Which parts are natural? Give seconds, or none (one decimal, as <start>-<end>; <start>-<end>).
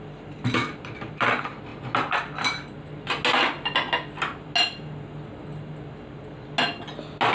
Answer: 0.0-7.3